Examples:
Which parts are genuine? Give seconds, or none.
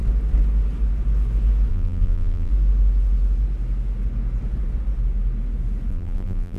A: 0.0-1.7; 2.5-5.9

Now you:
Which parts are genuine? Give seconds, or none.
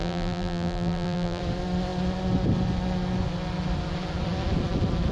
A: 1.4-5.1